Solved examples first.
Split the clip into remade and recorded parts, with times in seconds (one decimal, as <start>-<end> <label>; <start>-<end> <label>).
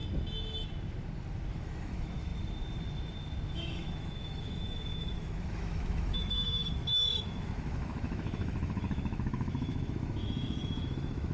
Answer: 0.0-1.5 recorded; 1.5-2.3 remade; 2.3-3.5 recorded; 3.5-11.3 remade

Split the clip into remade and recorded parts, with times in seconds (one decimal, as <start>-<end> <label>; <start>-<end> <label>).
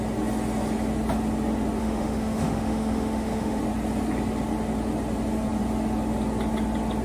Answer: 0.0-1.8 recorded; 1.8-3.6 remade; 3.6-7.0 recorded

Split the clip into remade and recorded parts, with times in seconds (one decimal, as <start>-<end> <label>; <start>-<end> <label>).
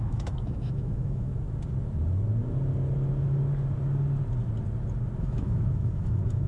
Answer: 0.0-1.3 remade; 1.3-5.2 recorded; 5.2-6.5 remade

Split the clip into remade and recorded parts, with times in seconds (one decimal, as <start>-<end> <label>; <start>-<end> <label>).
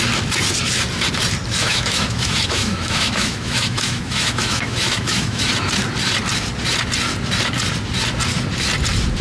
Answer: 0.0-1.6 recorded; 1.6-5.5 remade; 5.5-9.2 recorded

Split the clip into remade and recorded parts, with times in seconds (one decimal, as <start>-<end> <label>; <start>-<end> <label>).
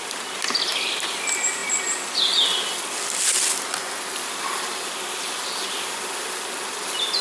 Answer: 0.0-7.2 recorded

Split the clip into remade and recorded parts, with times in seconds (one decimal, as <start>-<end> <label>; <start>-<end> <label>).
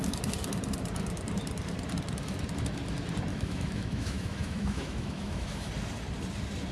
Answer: 0.0-3.3 recorded; 3.3-5.7 remade; 5.7-6.7 recorded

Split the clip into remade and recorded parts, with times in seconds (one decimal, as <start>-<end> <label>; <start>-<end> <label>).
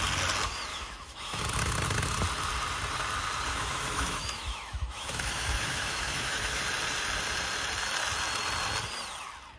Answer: 0.0-0.7 recorded; 0.7-1.4 remade; 1.4-3.5 recorded; 3.5-6.6 remade; 6.6-9.6 recorded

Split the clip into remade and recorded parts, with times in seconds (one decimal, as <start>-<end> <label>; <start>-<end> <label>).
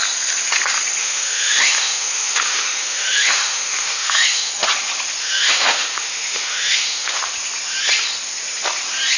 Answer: 0.0-1.0 recorded; 1.0-4.5 remade; 4.5-5.2 recorded; 5.2-7.2 remade; 7.2-9.2 recorded